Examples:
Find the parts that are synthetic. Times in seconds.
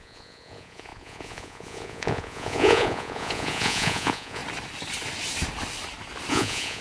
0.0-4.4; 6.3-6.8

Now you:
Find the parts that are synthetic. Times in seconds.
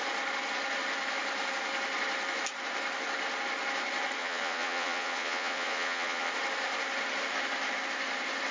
4.2-6.3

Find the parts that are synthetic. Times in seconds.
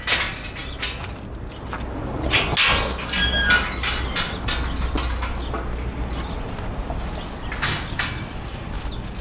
none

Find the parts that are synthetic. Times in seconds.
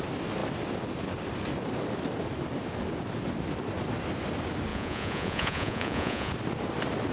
4.7-6.3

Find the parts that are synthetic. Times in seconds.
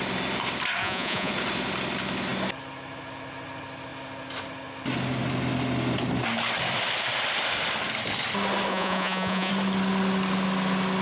0.8-1.3; 8.7-9.5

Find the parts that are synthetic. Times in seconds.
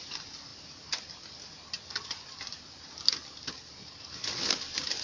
none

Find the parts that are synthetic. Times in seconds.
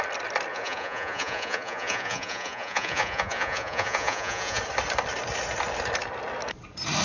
0.5-4.6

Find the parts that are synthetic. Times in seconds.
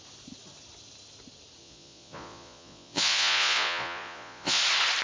1.6-4.6